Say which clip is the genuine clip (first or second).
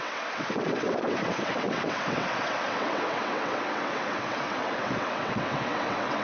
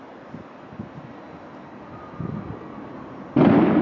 second